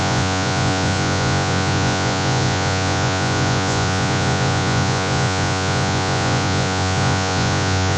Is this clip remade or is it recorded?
remade